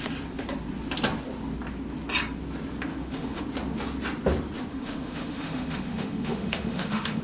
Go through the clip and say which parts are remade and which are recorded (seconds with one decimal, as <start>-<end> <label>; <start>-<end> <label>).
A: 0.0-2.9 recorded; 2.9-3.4 remade; 3.4-4.7 recorded; 4.7-7.2 remade